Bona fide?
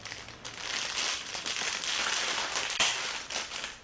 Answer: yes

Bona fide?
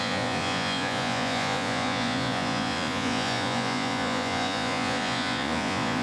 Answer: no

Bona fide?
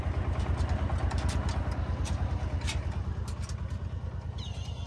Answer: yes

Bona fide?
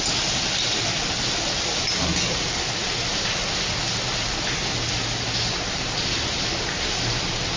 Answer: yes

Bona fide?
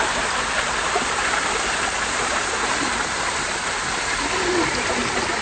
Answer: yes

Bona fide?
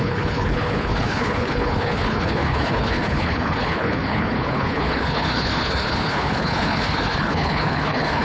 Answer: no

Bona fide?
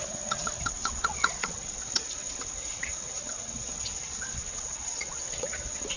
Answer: no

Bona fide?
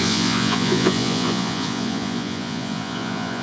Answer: no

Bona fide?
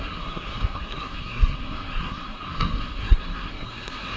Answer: no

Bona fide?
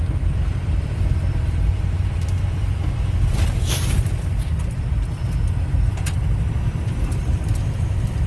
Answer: no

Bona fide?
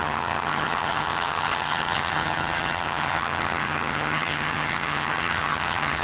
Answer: no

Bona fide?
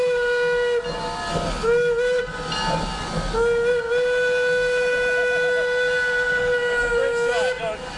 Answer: yes